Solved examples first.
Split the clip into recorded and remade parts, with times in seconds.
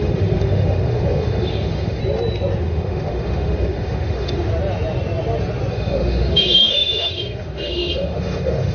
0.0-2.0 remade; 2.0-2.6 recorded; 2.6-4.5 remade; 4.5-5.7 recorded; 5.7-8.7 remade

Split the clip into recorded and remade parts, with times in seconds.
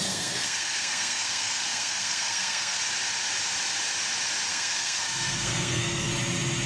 0.0-2.8 remade; 2.8-4.5 recorded; 4.5-6.1 remade; 6.1-6.7 recorded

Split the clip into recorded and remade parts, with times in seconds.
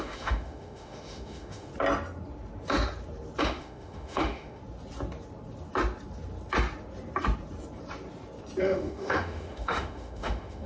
0.0-1.7 remade; 1.7-3.4 recorded; 3.4-4.6 remade; 4.6-8.6 recorded; 8.6-10.7 remade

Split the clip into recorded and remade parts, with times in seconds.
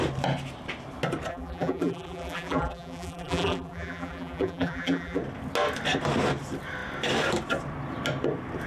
0.0-1.3 recorded; 1.3-5.2 remade; 5.2-8.7 recorded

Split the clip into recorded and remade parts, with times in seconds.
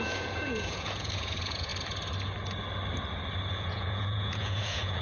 0.0-1.7 remade; 1.7-3.5 recorded; 3.5-5.0 remade